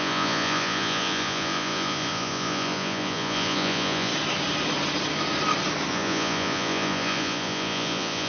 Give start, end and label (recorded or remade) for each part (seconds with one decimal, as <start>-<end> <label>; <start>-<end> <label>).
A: 0.0-4.1 remade; 4.1-5.9 recorded; 5.9-8.3 remade